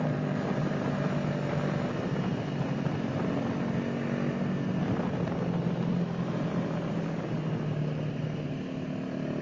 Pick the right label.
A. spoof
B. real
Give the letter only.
B